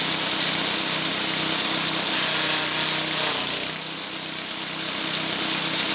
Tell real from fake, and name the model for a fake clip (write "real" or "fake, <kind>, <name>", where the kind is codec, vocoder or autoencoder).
real